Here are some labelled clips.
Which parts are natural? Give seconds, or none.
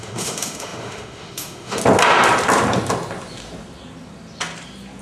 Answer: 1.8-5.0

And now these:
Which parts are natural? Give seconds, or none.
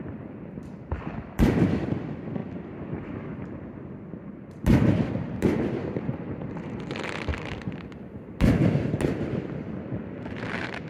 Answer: 2.4-5.1; 8.6-9.5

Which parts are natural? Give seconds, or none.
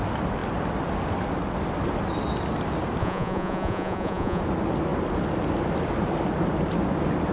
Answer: 0.0-3.0; 4.4-7.3